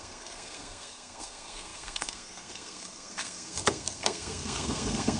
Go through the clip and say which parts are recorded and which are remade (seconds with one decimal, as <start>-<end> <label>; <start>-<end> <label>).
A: 0.0-5.2 remade